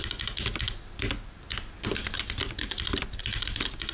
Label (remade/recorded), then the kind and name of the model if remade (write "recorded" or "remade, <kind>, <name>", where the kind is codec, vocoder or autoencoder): recorded